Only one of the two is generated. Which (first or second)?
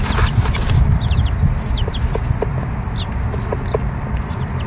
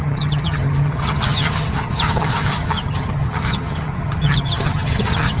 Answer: second